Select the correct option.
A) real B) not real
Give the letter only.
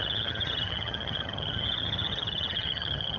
B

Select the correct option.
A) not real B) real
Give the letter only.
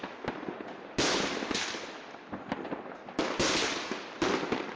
B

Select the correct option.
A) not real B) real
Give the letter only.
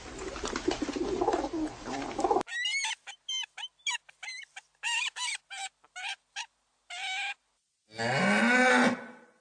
B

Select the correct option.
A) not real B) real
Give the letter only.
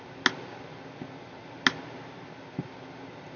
B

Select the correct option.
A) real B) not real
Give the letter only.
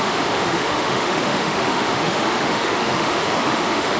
B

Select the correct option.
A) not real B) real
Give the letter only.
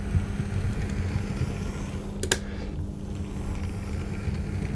B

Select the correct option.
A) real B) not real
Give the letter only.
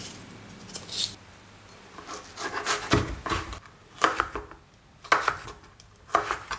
A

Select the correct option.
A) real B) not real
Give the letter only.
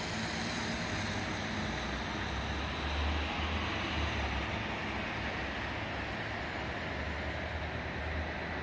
A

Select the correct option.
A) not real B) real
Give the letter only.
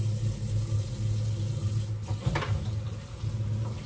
B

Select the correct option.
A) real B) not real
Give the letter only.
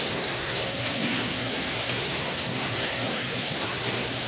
B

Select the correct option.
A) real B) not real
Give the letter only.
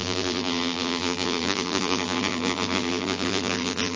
B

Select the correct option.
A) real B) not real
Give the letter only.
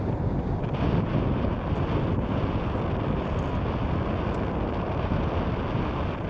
A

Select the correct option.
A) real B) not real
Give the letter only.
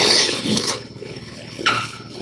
B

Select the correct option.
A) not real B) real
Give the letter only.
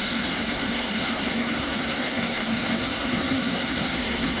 A